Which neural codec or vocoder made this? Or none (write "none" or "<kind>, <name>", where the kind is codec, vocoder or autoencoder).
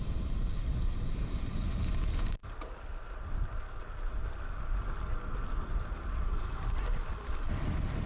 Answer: none